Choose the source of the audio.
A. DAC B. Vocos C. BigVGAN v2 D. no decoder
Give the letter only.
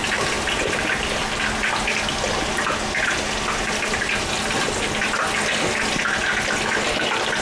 D